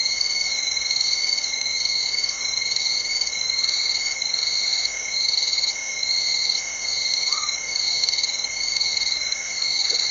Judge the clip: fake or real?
fake